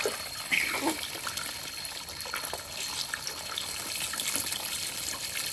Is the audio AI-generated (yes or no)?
no